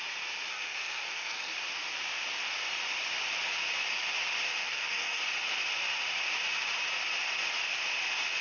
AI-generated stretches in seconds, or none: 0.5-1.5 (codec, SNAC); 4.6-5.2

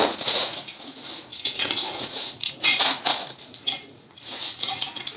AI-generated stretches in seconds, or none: 0.0-5.2 (vocoder, Vocos)

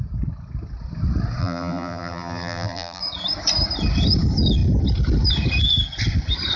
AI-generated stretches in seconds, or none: 1.4-3.0 (vocoder, BigVGAN v2)

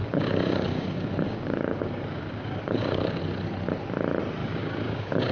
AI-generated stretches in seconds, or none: 0.0-3.2 (codec, DAC); 4.4-5.3

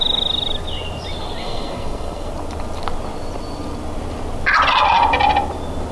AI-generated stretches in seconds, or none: 1.4-2.3 (codec, SNAC)

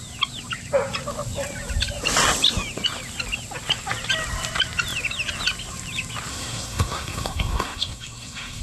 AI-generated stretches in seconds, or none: 6.3-8.6 (codec, SNAC)